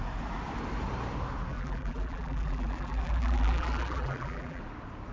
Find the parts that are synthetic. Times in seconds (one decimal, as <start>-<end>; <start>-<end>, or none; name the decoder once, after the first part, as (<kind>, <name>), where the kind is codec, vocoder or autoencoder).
1.5-4.6 (vocoder, BigVGAN v2)